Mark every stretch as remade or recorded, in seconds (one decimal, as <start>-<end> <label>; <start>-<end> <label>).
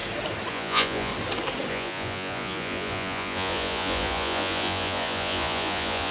0.0-0.5 recorded; 0.5-1.1 remade; 1.1-1.7 recorded; 1.7-6.1 remade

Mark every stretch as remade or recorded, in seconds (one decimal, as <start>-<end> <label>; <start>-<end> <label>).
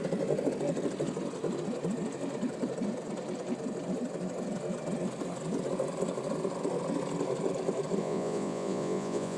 0.0-8.0 recorded; 8.0-9.4 remade